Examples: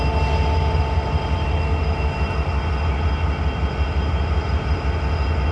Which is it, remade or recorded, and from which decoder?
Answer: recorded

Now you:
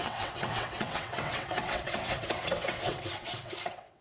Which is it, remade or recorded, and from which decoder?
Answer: remade, vocoder, WaveNeXt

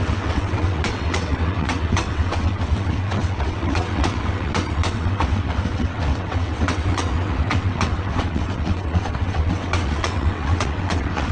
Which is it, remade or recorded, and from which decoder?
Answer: remade, vocoder, WaveNeXt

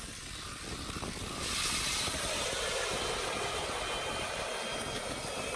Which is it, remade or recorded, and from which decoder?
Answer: recorded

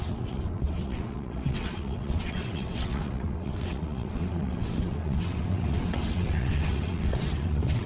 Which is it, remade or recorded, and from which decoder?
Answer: remade, vocoder, WaveNeXt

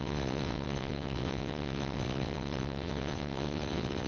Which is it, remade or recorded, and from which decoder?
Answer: remade, vocoder, WaveNeXt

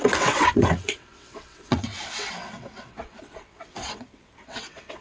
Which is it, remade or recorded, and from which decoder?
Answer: remade, vocoder, WaveNeXt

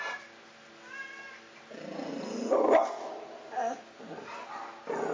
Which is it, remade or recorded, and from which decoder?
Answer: recorded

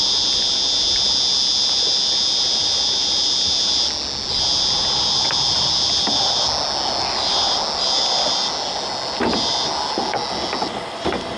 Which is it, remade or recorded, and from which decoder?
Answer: recorded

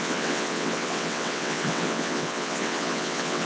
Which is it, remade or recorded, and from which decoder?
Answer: remade, vocoder, WaveNeXt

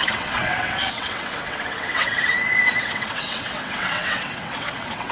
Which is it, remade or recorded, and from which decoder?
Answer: remade, vocoder, WaveNeXt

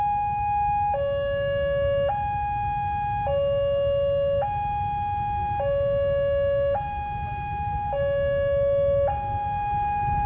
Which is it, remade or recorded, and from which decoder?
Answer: recorded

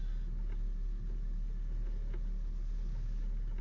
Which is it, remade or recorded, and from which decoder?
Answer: recorded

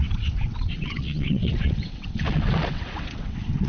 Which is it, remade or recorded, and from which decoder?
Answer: remade, vocoder, WaveNeXt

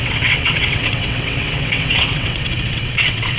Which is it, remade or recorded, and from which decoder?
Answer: remade, vocoder, WaveNeXt